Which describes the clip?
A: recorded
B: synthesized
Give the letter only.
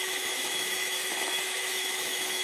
B